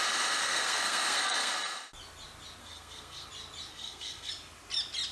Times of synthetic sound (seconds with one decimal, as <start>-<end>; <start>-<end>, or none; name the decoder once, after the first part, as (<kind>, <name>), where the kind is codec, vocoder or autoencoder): 0.4-1.5 (codec, SNAC); 2.6-3.3; 3.7-4.3